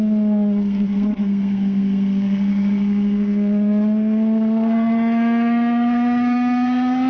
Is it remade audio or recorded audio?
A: remade